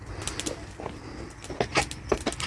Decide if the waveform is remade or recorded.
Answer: recorded